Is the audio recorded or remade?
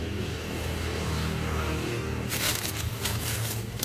remade